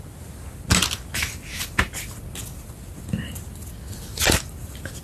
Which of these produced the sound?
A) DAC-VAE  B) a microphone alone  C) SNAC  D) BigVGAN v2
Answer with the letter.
B